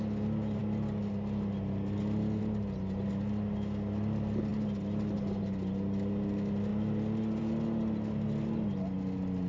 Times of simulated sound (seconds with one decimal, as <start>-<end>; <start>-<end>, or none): none